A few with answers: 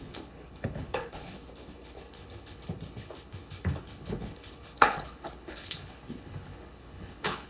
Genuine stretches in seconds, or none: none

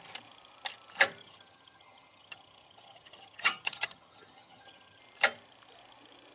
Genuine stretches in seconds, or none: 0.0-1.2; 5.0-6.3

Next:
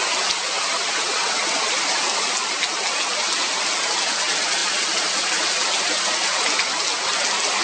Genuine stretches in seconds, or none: 0.0-1.0; 1.7-7.6

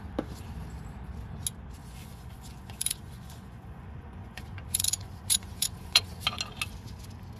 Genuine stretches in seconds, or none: 0.0-1.8; 6.2-7.4

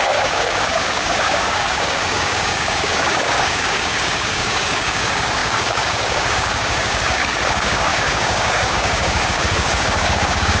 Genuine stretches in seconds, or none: none